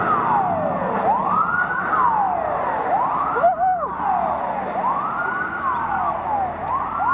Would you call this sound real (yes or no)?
yes